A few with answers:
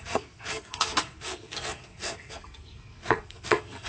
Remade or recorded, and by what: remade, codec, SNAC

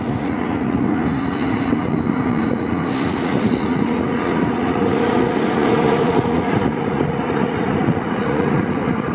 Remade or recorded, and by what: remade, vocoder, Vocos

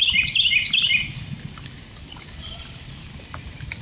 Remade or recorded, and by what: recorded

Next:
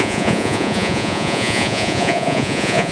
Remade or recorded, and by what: remade, vocoder, Vocos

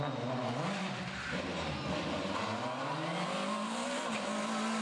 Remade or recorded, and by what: recorded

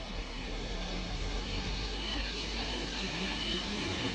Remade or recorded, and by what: remade, codec, SNAC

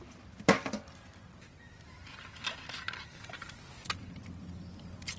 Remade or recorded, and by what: recorded